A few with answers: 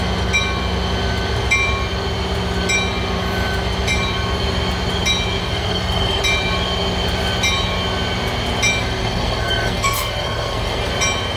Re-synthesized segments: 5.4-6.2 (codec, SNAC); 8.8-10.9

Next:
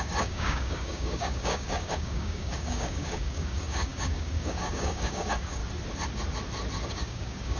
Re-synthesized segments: 0.0-5.6 (codec, DAC); 6.9-7.6

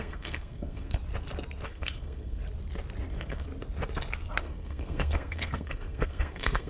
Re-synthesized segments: 0.0-1.0 (codec, SNAC); 1.7-2.4; 3.1-3.5; 4.4-6.7

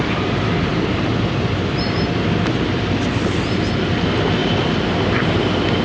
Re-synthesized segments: 0.7-1.8 (vocoder, BigVGAN v2)

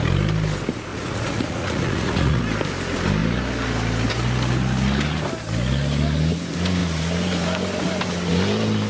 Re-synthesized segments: 0.9-2.4 (vocoder, Vocos)

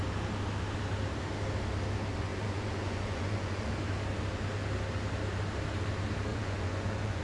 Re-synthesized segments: 2.3-3.7 (vocoder, Vocos); 6.3-7.2

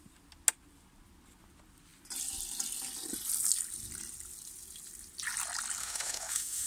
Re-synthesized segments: 5.8-6.7 (autoencoder, DAC-VAE)